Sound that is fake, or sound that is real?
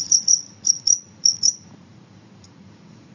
fake